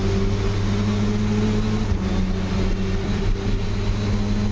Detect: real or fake real